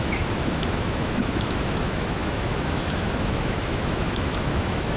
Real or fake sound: fake